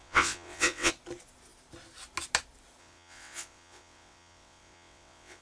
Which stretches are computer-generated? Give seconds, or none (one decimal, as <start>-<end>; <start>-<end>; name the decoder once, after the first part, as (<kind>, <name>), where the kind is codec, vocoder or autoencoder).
0.0-0.9 (vocoder, WaveNeXt); 2.8-5.4